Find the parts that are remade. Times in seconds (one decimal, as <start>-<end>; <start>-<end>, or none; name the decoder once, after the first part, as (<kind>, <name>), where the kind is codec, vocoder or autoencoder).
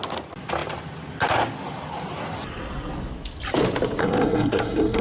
4.0-5.0 (codec, SNAC)